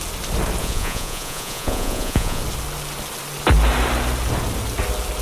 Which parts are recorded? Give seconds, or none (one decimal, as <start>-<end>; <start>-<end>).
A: 0.0-0.6; 2.4-5.2